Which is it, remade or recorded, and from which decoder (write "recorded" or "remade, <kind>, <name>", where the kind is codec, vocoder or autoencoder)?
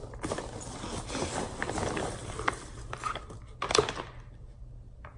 recorded